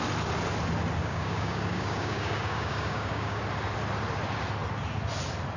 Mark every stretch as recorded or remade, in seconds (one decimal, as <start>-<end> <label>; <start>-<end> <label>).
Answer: 0.0-1.0 recorded; 1.0-3.4 remade; 3.4-5.6 recorded

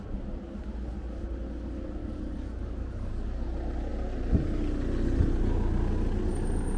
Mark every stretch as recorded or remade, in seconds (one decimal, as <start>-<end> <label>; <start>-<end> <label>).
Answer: 0.0-2.0 recorded; 2.0-3.1 remade; 3.1-6.8 recorded